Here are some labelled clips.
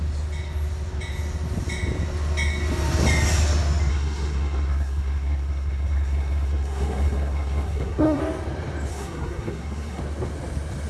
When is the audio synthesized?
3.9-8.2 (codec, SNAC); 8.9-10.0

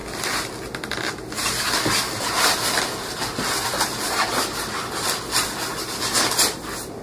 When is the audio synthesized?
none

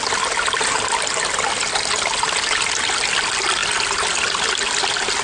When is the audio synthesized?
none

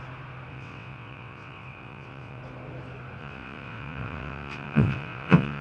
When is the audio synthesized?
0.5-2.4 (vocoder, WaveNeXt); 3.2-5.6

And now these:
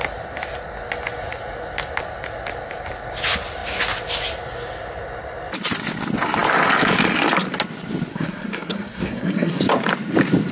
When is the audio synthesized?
8.1-9.6 (codec, SNAC)

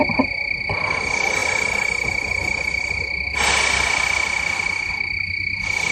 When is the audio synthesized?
none

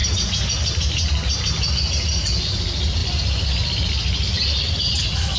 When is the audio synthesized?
none

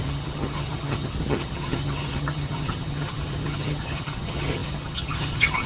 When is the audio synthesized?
0.0-5.7 (vocoder, HiFi-GAN)